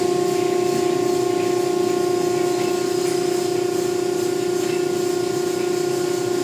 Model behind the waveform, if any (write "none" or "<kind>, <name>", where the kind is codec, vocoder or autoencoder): none